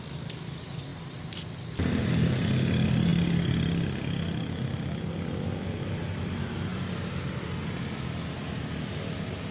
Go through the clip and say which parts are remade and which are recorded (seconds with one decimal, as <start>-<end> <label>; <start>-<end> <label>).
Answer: 0.0-9.5 recorded